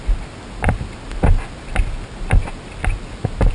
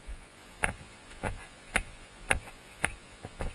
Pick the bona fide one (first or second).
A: first